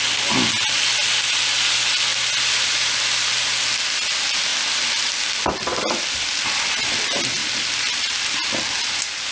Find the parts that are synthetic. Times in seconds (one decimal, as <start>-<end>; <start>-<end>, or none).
4.5-6.0